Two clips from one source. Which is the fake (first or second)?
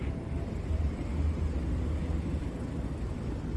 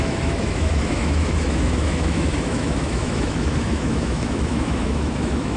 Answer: second